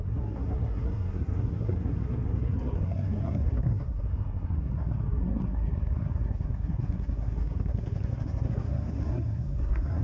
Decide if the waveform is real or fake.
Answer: fake